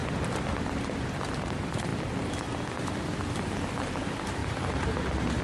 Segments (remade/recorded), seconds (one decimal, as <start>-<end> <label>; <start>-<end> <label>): 0.0-1.4 recorded; 1.4-1.9 remade; 1.9-4.0 recorded; 4.0-5.4 remade